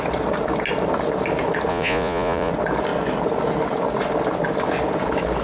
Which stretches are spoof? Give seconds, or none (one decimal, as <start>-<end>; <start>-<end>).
1.7-2.5